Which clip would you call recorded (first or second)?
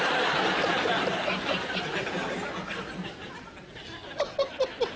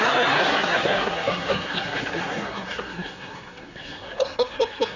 first